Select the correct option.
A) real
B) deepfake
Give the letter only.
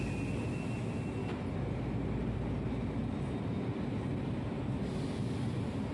A